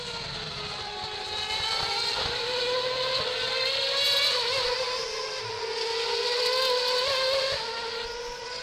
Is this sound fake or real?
real